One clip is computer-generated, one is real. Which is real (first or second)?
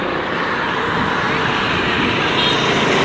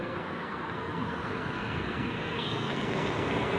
first